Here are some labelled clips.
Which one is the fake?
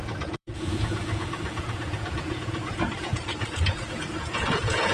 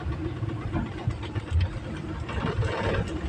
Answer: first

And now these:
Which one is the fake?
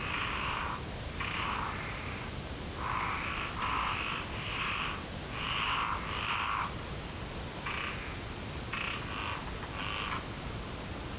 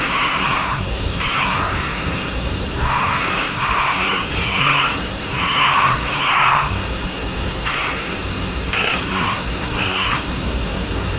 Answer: second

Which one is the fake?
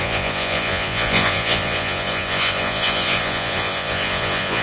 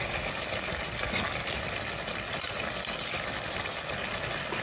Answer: first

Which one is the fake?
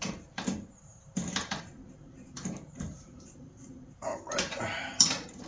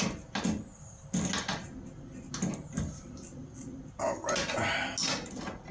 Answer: first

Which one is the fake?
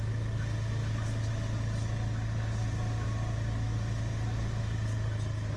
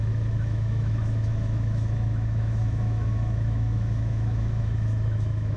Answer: second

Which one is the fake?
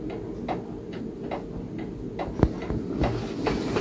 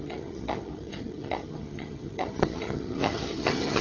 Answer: second